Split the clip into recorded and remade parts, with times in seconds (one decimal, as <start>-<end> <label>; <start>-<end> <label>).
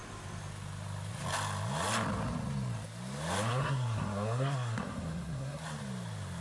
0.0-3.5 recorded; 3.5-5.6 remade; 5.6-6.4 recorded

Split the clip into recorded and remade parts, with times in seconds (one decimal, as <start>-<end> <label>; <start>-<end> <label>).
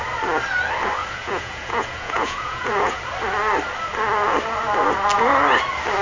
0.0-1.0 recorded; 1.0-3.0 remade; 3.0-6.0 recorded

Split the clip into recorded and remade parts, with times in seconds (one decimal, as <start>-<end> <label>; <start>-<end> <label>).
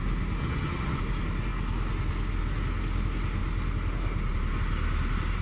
0.0-0.4 recorded; 0.4-1.0 remade; 1.0-5.4 recorded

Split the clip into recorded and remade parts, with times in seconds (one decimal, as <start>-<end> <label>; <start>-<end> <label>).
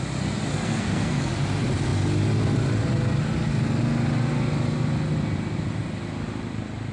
0.0-0.5 recorded; 0.5-1.2 remade; 1.2-6.9 recorded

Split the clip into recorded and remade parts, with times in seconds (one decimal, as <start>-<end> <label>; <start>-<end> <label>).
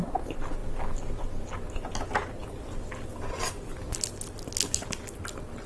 0.0-5.7 recorded